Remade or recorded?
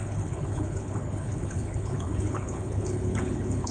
remade